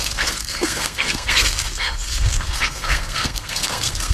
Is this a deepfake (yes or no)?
yes